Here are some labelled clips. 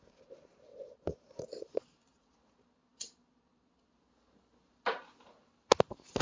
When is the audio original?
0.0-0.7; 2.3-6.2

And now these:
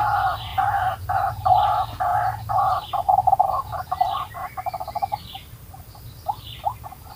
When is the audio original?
0.0-0.5; 1.3-7.2

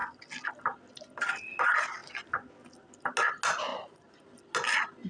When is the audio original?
0.0-3.7; 4.2-5.1

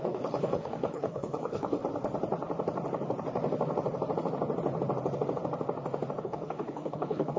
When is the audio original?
1.8-6.2

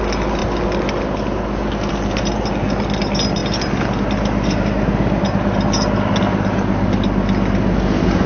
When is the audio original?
0.0-8.3

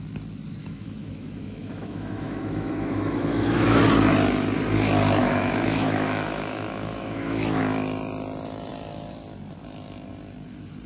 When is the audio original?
0.0-0.6; 3.8-5.2; 7.6-10.9

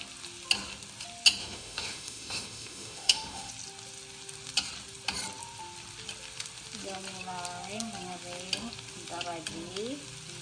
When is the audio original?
0.0-1.4; 3.5-10.4